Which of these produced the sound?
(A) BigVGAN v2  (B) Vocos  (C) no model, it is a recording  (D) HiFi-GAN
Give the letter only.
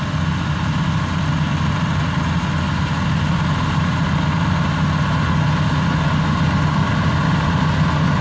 C